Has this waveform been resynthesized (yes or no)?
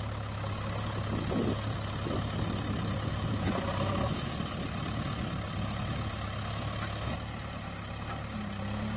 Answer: no